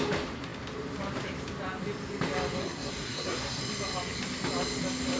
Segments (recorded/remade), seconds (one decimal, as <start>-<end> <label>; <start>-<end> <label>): 0.0-2.6 recorded; 2.6-3.6 remade; 3.6-5.2 recorded